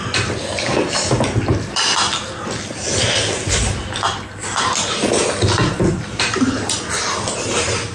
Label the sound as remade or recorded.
recorded